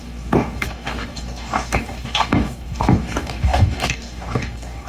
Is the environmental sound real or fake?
fake